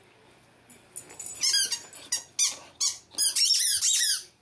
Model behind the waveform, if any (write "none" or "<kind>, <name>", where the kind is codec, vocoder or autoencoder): none